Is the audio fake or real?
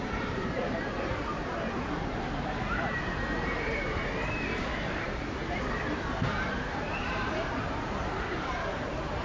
fake